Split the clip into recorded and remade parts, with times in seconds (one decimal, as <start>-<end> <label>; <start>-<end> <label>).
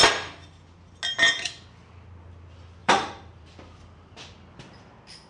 0.0-2.8 recorded; 2.8-3.5 remade; 3.5-5.3 recorded